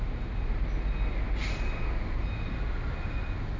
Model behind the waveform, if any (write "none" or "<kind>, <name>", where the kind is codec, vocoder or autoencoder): none